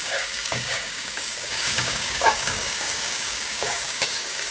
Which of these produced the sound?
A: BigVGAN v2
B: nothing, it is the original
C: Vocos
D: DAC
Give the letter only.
D